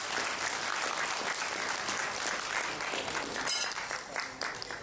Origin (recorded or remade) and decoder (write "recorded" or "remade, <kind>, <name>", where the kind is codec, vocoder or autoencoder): recorded